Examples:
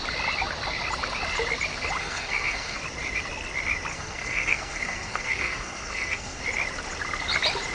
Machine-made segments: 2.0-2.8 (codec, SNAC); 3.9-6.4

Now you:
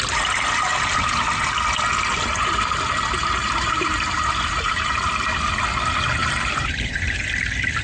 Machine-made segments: 3.2-5.1 (vocoder, BigVGAN v2); 6.2-7.2

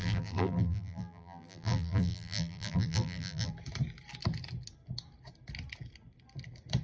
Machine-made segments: 0.0-3.5 (vocoder, BigVGAN v2)

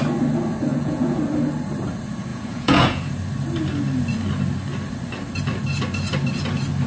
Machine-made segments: 0.7-1.2 (vocoder, Vocos); 2.3-3.1

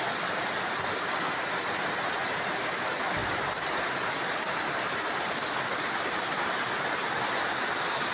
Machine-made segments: none

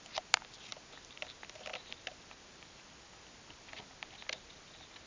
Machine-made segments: none

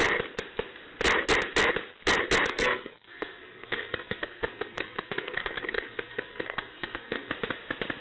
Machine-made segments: 2.5-7.3 (codec, SNAC)

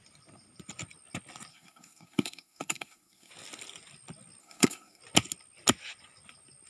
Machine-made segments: 1.5-3.3 (codec, SNAC); 4.4-5.0